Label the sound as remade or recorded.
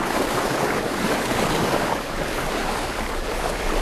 remade